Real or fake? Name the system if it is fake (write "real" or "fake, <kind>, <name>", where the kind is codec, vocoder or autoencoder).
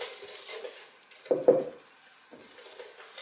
real